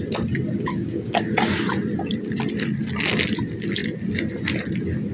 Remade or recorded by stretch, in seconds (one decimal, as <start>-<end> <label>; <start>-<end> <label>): 0.0-0.7 recorded; 0.7-1.3 remade; 1.3-5.1 recorded